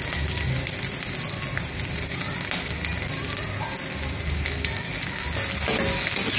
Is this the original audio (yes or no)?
yes